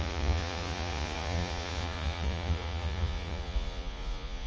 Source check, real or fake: fake